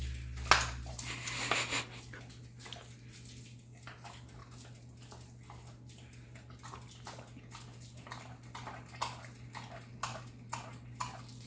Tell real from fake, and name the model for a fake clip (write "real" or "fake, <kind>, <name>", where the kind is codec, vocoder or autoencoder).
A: real